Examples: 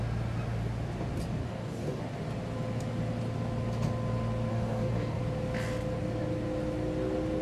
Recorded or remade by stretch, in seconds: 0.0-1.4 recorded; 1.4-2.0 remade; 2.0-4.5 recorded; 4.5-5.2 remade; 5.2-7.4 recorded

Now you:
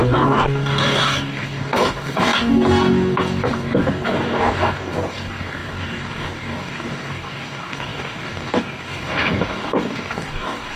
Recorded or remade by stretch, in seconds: 0.0-10.8 remade

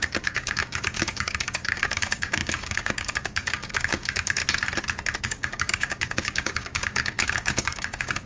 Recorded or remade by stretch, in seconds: 0.0-4.4 remade; 4.4-5.2 recorded; 5.2-8.3 remade

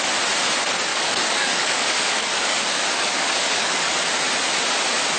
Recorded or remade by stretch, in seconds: 0.0-0.9 recorded; 0.9-4.0 remade; 4.0-5.2 recorded

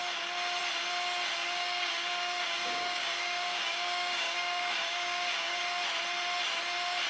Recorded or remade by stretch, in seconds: 0.0-1.4 recorded; 1.4-5.6 remade; 5.6-7.1 recorded